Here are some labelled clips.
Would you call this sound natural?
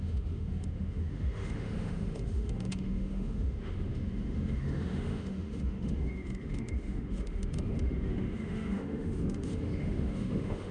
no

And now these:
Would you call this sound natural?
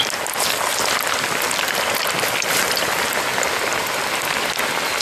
yes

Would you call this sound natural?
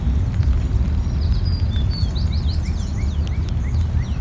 yes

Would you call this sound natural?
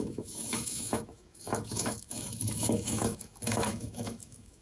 no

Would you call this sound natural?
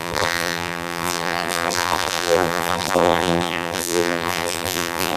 no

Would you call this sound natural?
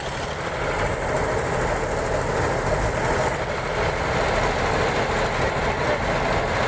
yes